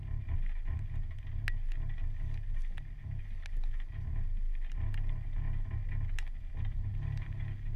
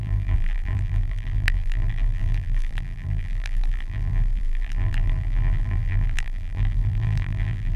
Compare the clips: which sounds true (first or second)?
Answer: first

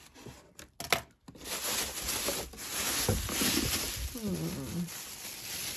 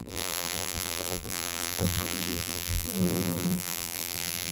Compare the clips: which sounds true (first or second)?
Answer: first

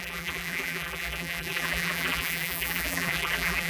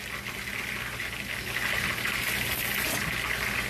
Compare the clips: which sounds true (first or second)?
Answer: second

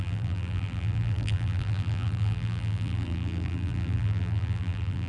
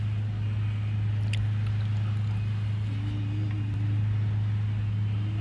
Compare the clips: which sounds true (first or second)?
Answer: second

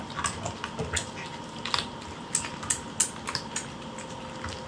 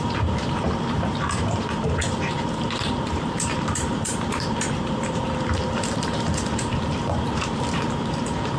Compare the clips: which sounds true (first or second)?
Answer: first